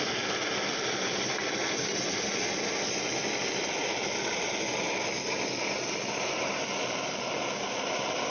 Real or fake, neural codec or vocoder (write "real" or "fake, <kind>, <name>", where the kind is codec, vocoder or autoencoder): real